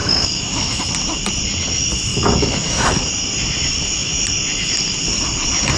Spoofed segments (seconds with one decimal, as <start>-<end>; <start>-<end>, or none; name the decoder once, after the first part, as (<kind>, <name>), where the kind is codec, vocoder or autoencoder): 0.0-0.8 (autoencoder, DAC-VAE); 2.1-3.1